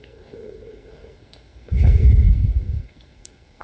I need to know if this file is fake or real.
fake